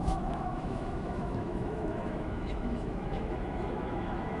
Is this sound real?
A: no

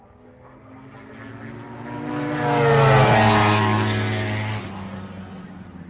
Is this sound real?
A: yes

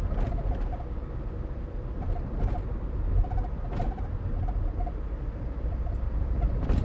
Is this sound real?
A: yes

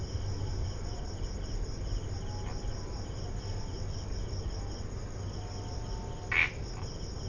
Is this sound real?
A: yes